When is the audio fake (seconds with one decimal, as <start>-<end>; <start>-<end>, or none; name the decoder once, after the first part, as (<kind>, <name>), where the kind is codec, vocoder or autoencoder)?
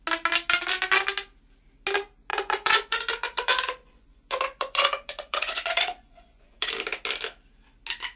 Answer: 2.3-6.7 (vocoder, Vocos)